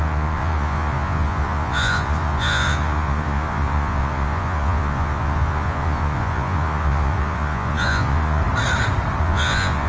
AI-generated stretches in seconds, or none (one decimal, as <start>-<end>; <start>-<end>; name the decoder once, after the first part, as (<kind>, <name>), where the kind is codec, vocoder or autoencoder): 0.0-8.4 (vocoder, Vocos); 9.2-9.9